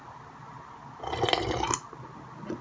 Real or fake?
real